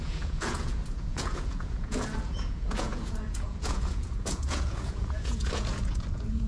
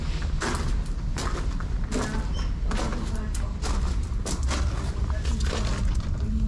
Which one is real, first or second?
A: second